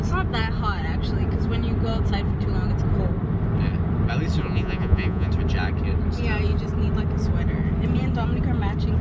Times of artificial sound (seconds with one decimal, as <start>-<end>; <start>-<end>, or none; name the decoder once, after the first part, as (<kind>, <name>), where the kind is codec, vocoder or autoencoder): 4.4-5.3 (vocoder, Vocos)